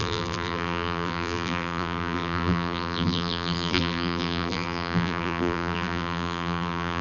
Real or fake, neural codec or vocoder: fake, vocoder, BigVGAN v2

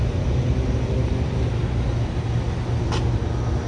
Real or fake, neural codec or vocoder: real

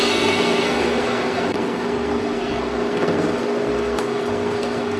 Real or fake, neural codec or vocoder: fake, codec, SNAC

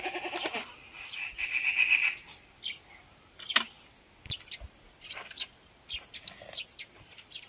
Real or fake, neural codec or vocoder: real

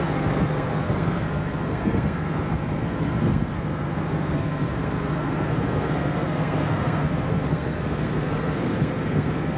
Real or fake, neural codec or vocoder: fake, codec, SNAC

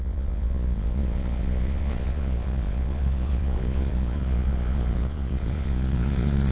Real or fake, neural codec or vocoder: fake, vocoder, Vocos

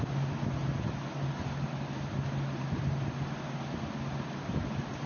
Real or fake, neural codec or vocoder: real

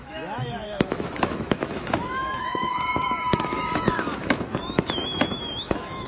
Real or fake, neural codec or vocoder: fake, autoencoder, DAC-VAE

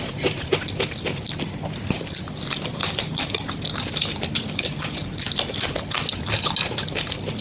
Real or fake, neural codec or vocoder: real